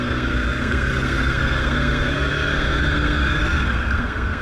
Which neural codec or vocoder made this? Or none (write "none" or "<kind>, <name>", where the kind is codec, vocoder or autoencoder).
codec, SNAC